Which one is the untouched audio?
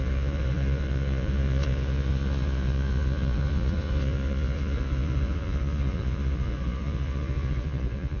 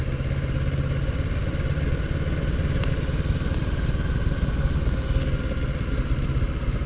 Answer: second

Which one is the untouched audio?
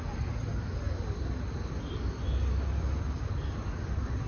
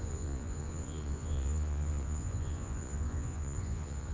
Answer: first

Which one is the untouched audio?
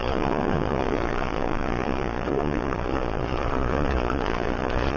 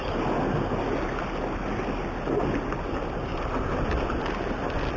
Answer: second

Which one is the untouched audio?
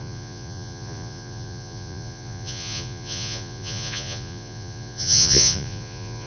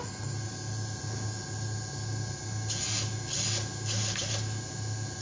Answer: second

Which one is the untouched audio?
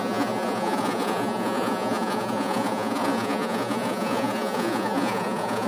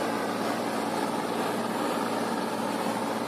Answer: second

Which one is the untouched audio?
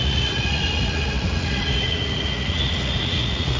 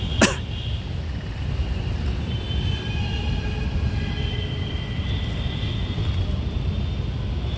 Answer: second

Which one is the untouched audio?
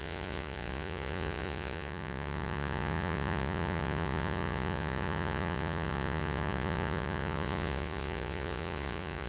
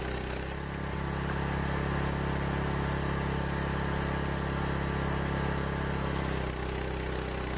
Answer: second